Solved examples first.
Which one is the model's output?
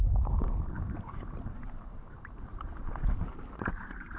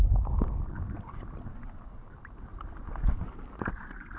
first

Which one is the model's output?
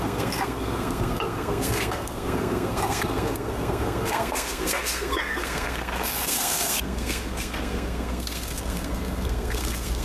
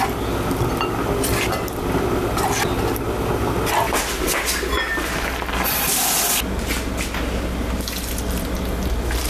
first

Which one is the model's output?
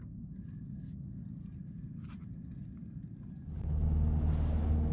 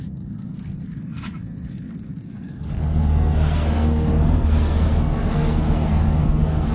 second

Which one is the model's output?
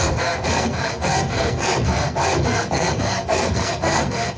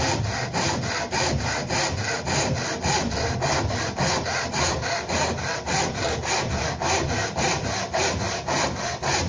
first